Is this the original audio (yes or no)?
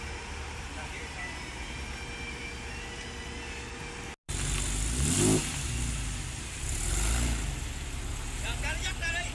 yes